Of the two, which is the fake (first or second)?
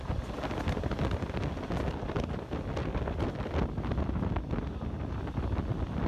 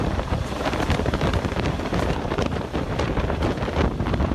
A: second